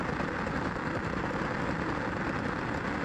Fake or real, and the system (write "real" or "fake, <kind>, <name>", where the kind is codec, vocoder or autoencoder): real